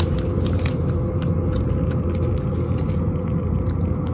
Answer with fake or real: real